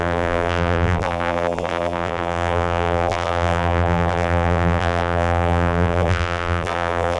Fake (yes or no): yes